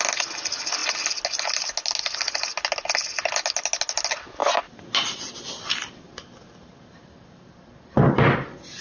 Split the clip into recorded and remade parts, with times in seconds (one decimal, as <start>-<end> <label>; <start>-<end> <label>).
0.0-8.8 recorded